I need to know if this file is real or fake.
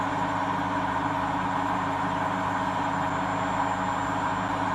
real